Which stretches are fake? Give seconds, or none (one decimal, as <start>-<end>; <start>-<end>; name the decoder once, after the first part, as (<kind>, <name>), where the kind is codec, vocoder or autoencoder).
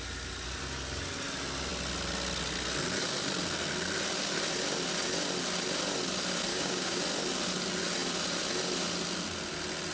6.5-7.0 (codec, DAC)